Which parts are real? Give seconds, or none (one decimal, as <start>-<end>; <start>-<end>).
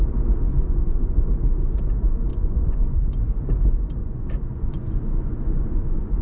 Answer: 0.0-0.5; 1.2-2.3; 3.2-4.0